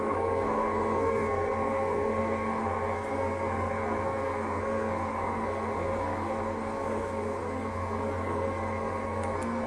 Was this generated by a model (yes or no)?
yes